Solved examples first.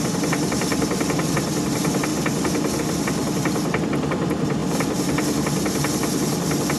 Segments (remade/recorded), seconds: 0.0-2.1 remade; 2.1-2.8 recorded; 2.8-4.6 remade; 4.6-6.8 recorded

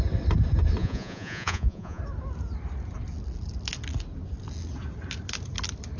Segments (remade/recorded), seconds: 0.0-0.8 recorded; 0.8-2.0 remade; 2.0-6.0 recorded

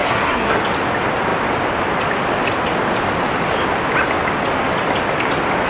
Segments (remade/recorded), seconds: 0.0-0.6 remade; 0.6-5.7 recorded

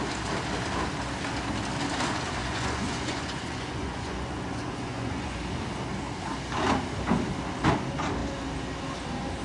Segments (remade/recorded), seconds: 0.0-2.4 recorded; 2.4-5.4 remade; 5.4-9.4 recorded

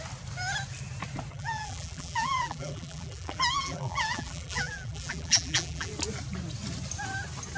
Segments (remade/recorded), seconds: 0.0-1.3 recorded; 1.3-5.9 remade; 5.9-7.6 recorded

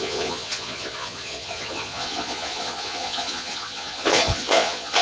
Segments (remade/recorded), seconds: 0.0-5.0 remade